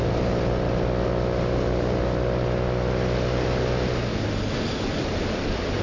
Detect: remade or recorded recorded